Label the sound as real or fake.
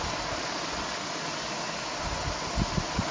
real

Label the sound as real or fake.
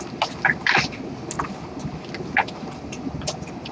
real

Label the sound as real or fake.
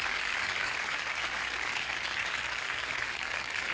fake